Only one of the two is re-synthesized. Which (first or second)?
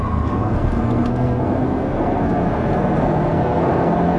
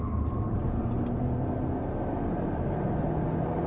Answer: first